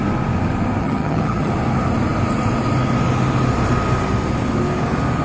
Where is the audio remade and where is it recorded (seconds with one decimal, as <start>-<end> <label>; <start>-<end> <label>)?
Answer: 0.0-0.8 recorded; 0.8-1.5 remade; 1.5-5.2 recorded